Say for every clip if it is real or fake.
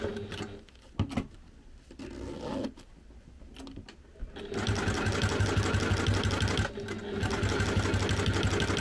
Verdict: real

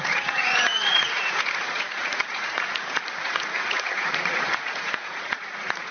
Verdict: fake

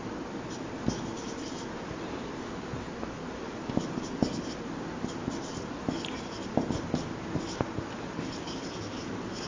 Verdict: real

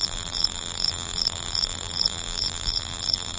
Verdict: fake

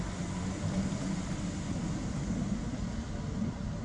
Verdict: real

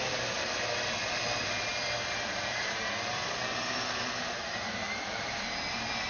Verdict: real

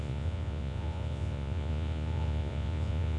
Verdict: fake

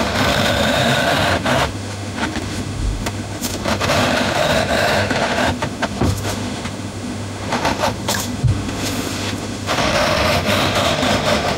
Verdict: fake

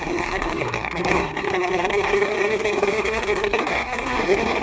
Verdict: fake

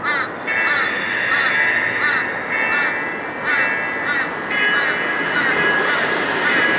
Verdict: real